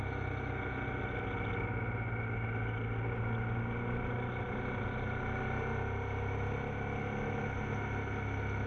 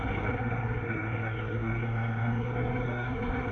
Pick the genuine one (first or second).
first